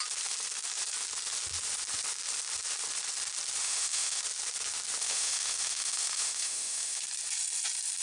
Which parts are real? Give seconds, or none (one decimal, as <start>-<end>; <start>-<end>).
0.0-3.6; 4.2-5.0; 7.0-8.0